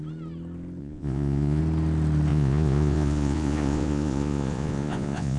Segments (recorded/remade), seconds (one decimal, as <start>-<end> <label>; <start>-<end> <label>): 0.0-0.8 recorded; 0.8-1.6 remade; 1.6-2.3 recorded; 2.3-5.4 remade